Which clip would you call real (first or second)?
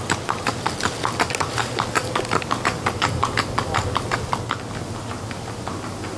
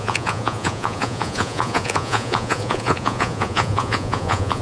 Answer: first